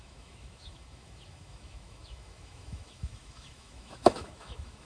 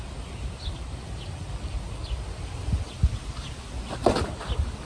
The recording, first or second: second